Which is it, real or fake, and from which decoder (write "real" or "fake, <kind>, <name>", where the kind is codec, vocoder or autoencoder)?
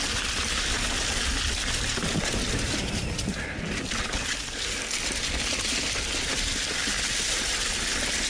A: real